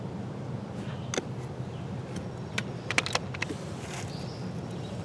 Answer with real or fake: real